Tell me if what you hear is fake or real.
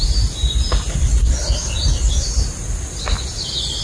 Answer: real